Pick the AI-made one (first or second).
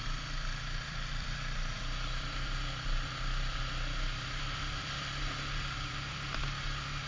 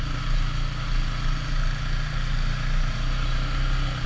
first